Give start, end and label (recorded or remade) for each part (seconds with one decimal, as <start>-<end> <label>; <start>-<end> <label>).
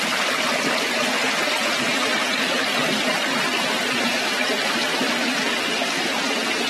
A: 0.0-6.7 recorded